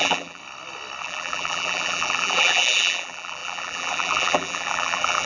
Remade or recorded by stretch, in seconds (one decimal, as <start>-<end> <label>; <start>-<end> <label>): 0.0-0.4 remade; 0.4-1.0 recorded; 1.0-5.3 remade